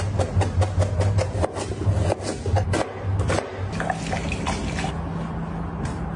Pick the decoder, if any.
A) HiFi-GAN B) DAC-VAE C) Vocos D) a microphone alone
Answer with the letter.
D